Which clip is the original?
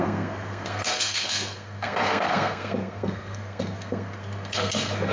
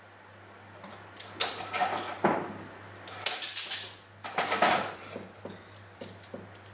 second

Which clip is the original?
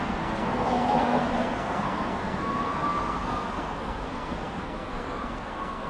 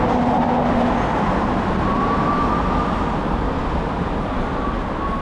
second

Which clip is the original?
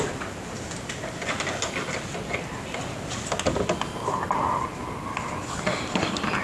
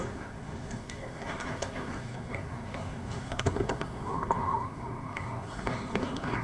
first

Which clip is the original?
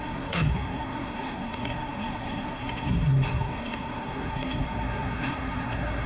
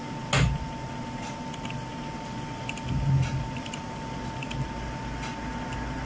second